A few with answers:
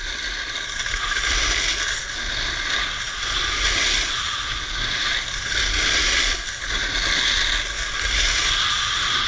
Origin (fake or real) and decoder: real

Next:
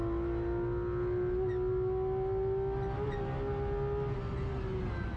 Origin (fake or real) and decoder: real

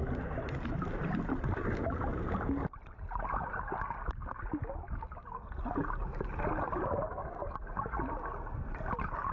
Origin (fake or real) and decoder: real